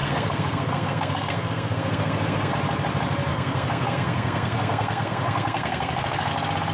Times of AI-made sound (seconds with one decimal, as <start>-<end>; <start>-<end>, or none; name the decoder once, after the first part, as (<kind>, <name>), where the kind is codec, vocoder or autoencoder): 0.0-2.5 (codec, SNAC); 3.3-6.3

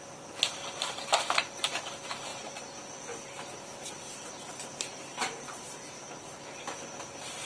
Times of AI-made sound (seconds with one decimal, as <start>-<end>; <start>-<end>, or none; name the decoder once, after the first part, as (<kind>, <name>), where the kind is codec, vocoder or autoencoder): 2.3-6.1 (vocoder, BigVGAN v2)